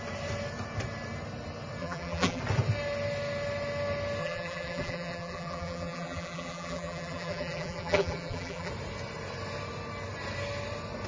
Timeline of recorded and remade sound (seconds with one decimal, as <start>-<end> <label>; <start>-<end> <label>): 0.0-1.8 recorded; 1.8-2.4 remade; 2.4-4.2 recorded; 4.2-8.7 remade; 8.7-11.1 recorded